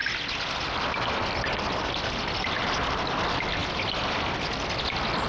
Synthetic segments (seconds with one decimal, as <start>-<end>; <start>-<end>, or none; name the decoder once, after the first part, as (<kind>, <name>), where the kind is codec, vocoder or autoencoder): none